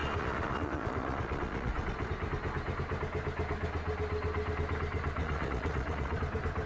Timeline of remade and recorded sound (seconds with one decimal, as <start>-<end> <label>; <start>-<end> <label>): 0.0-2.1 remade; 2.1-5.2 recorded; 5.2-6.2 remade; 6.2-6.7 recorded